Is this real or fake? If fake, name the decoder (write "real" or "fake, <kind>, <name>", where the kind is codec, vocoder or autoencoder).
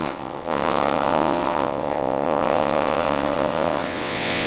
fake, vocoder, WaveNeXt